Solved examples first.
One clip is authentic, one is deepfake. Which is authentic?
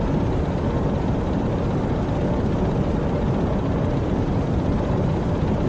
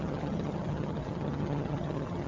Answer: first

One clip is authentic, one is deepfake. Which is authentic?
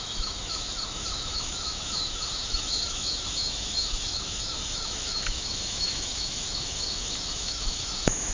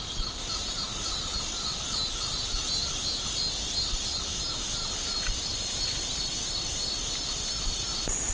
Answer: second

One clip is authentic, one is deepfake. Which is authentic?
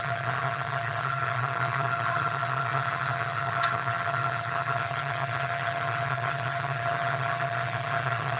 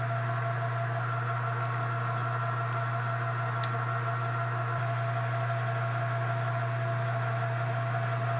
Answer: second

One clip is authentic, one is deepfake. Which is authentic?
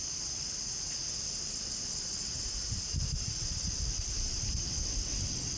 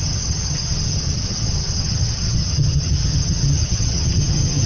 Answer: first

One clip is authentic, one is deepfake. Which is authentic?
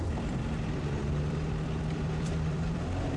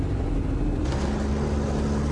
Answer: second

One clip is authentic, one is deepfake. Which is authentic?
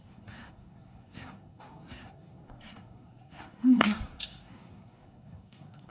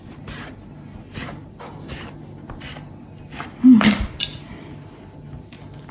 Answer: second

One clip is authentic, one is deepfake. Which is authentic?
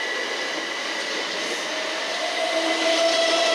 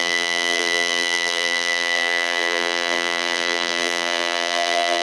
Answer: first